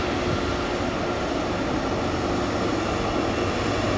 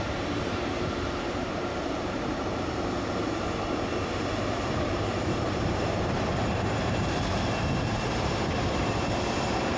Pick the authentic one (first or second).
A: first